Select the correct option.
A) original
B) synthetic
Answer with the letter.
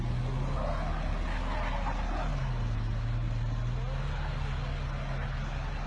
A